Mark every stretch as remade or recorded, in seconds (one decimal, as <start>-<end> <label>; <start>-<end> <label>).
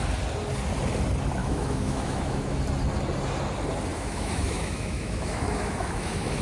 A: 0.0-1.4 recorded; 1.4-2.6 remade; 2.6-3.9 recorded; 3.9-6.4 remade